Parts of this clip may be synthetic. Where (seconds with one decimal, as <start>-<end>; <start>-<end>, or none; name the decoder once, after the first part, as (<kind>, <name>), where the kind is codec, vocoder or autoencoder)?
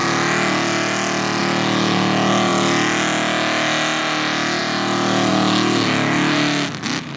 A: none